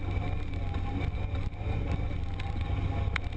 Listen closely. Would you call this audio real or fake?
real